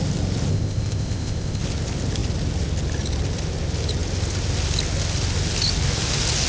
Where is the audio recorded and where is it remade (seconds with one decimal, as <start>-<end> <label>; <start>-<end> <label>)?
0.0-0.5 recorded; 0.5-1.6 remade; 1.6-6.5 recorded